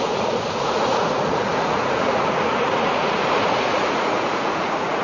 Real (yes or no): no